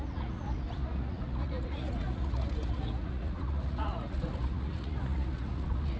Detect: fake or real fake